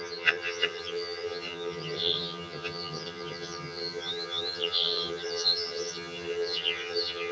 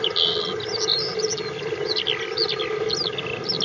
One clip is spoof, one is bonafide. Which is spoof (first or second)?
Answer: first